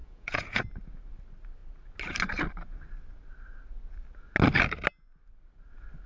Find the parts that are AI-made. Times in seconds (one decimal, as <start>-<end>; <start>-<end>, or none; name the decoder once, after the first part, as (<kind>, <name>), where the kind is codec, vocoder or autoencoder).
0.0-0.6 (vocoder, Vocos)